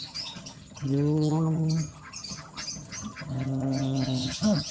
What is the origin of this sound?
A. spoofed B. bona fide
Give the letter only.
A